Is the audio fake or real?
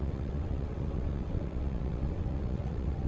fake